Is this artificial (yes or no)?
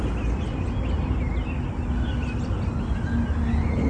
no